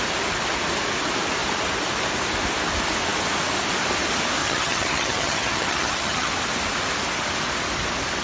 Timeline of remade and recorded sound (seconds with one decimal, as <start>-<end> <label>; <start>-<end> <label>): 0.0-4.4 recorded; 4.4-6.3 remade; 6.3-8.2 recorded